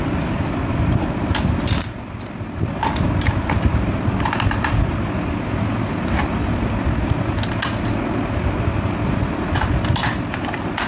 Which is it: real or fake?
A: real